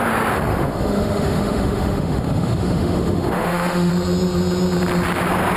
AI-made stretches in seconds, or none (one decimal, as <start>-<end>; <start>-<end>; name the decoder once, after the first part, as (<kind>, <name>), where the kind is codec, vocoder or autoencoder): 0.5-3.9 (autoencoder, DAC-VAE)